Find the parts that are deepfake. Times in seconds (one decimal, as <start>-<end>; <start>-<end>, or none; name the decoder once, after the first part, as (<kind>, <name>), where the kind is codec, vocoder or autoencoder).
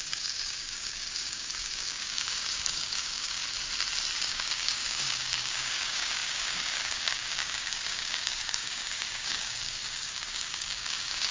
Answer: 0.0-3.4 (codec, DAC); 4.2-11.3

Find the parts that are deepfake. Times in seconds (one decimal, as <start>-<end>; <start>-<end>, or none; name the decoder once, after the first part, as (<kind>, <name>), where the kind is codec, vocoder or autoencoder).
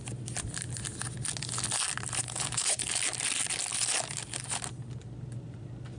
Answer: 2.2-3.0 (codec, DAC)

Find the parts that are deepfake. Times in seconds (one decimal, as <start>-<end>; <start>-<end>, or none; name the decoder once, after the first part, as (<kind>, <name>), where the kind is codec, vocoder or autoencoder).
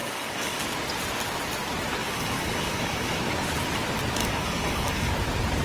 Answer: 0.0-0.6 (codec, DAC); 2.0-3.2; 4.2-5.1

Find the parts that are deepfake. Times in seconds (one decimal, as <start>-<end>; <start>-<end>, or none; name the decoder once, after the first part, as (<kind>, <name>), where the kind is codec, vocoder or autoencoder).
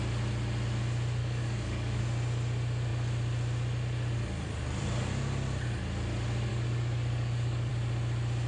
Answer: 1.2-2.0 (codec, DAC); 6.5-7.7